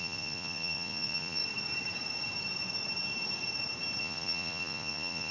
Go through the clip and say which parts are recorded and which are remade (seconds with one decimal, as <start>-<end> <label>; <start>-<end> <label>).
0.0-1.4 remade; 1.4-4.0 recorded; 4.0-5.3 remade